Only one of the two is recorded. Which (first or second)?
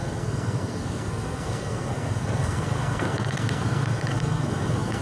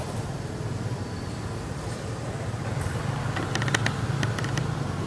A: second